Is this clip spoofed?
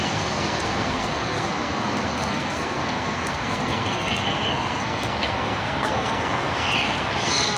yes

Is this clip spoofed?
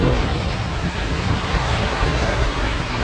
yes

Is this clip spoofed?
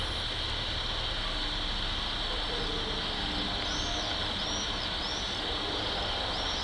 no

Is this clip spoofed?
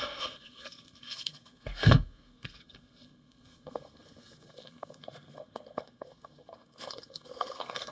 yes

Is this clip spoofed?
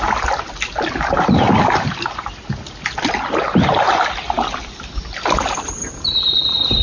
no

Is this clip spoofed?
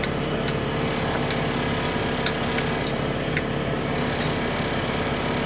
no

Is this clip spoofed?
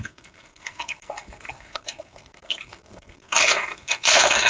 yes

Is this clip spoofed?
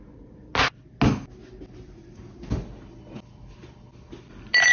no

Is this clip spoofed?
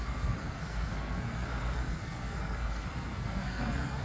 yes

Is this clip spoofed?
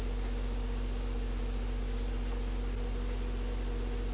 no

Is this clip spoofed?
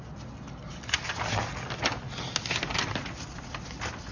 no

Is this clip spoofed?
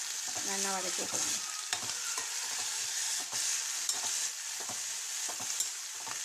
no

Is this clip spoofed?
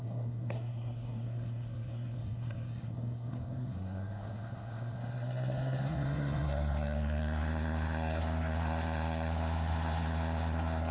yes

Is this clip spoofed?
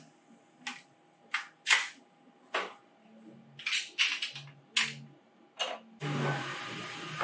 no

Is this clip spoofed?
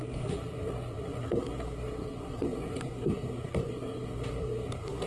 yes